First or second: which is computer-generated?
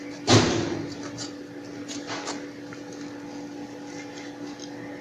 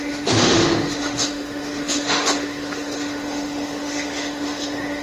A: second